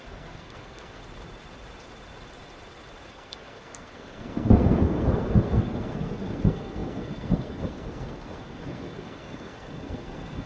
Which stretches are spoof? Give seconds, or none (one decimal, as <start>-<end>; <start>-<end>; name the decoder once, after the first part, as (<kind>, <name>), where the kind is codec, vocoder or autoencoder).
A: 0.0-1.0 (codec, SNAC); 3.1-10.5